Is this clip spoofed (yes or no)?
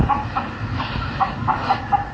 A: no